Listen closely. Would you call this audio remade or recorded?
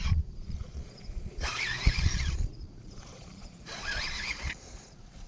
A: remade